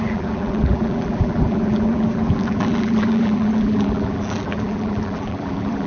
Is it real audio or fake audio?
fake